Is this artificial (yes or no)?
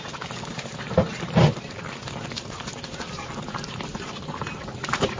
no